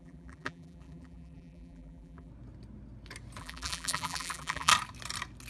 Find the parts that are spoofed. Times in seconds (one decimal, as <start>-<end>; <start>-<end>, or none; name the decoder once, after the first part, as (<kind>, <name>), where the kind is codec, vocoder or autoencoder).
0.0-2.3 (vocoder, BigVGAN v2); 3.4-4.7